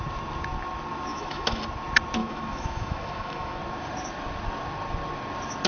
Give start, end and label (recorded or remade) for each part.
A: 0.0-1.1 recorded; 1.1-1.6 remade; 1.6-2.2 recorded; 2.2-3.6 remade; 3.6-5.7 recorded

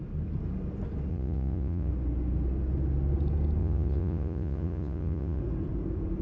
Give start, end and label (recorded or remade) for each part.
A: 0.0-1.1 recorded; 1.1-1.9 remade; 1.9-3.6 recorded; 3.6-5.4 remade; 5.4-6.2 recorded

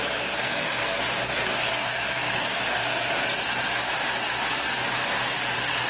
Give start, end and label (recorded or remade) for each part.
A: 0.0-0.4 recorded; 0.4-1.0 remade; 1.0-1.7 recorded; 1.7-2.6 remade; 2.6-5.9 recorded